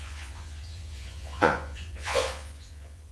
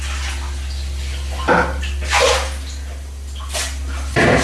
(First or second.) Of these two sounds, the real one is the second